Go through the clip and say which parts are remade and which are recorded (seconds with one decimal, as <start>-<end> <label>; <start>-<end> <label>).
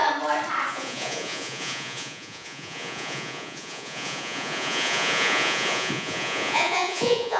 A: 0.0-0.7 recorded; 0.7-7.4 remade